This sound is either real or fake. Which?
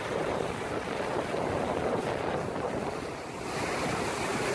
real